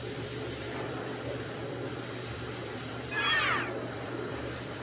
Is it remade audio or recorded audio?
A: remade